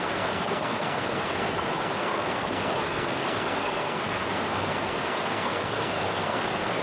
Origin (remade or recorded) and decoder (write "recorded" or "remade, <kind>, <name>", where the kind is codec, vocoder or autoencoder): remade, codec, SNAC